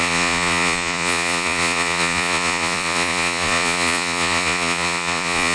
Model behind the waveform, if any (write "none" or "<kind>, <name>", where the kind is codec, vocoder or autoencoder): vocoder, Vocos